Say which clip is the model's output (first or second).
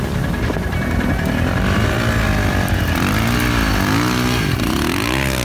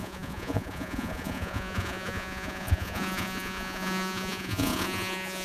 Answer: second